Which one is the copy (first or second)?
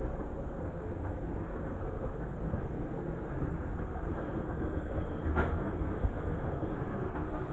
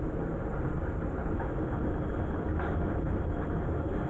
first